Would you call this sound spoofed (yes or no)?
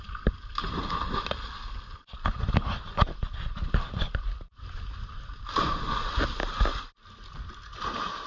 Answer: no